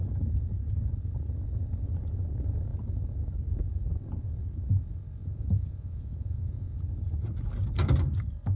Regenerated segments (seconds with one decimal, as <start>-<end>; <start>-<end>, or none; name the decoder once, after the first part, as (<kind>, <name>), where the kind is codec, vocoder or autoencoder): 5.2-6.8 (vocoder, Vocos)